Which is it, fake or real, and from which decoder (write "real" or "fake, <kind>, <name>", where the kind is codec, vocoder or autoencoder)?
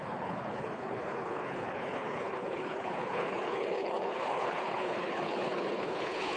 fake, codec, HILCodec